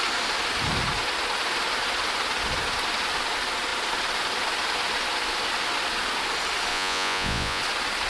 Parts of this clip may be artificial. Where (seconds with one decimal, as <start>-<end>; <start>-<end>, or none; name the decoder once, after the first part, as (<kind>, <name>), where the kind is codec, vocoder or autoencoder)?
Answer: 6.7-7.6 (vocoder, Vocos)